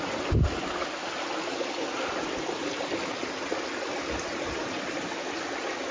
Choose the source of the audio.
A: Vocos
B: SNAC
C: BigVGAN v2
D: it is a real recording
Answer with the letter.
D